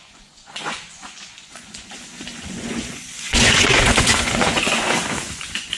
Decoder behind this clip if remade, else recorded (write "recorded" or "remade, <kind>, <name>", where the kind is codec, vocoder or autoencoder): remade, vocoder, Vocos